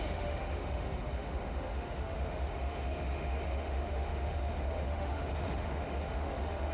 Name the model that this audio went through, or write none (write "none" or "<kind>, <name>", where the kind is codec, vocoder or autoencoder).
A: autoencoder, DAC-VAE